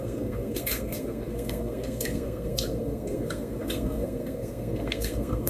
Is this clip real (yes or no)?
no